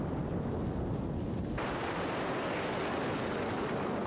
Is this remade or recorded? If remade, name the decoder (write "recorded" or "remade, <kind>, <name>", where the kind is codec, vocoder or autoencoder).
recorded